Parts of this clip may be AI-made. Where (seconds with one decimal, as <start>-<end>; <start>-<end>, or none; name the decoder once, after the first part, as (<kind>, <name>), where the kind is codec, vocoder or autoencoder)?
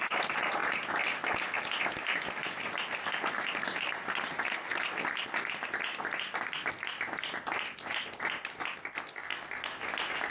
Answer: 2.4-4.7 (vocoder, BigVGAN v2)